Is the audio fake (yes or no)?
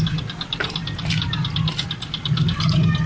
no